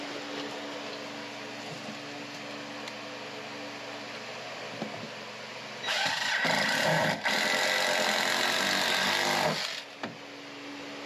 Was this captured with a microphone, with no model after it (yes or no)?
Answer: yes